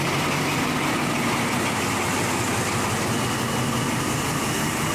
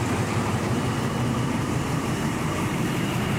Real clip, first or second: first